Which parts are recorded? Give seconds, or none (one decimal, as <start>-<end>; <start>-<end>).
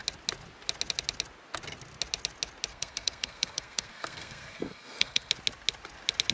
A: 0.0-2.7; 5.3-6.3